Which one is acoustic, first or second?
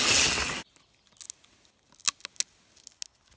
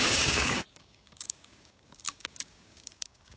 first